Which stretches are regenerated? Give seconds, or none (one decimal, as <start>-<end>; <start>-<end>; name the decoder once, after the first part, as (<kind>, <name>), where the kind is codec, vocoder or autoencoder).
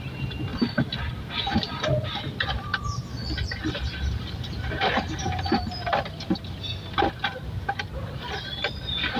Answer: none